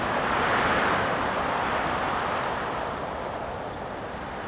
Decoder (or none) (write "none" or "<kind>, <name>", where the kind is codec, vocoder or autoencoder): none